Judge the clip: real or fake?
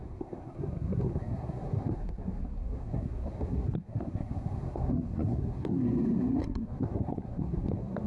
fake